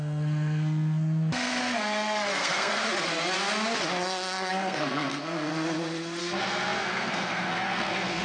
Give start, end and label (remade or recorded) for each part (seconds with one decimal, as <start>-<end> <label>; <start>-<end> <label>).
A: 0.0-2.8 remade; 2.8-4.5 recorded; 4.5-5.5 remade; 5.5-6.2 recorded; 6.2-8.2 remade